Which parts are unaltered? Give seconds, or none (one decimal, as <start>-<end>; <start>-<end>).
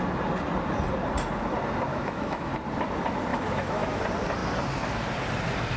0.0-1.9; 2.5-3.3; 4.0-5.8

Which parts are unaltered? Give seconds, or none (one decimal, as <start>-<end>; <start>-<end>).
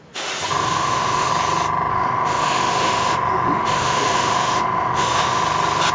0.0-0.6; 1.3-1.9; 5.4-5.9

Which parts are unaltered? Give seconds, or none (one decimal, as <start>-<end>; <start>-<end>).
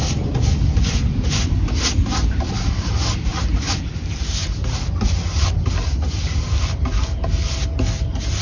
0.0-8.4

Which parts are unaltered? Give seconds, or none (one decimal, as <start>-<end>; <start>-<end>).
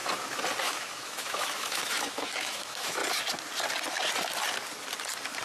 0.0-0.6; 3.0-5.4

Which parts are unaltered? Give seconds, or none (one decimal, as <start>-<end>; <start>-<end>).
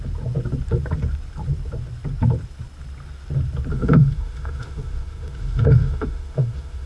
0.0-3.7